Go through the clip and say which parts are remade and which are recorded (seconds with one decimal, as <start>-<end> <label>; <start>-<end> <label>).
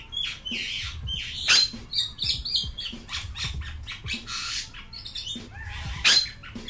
0.0-6.7 recorded